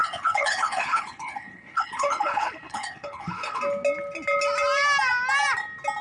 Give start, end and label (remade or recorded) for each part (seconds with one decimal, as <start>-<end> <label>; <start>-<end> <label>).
0.0-3.6 remade; 3.6-6.0 recorded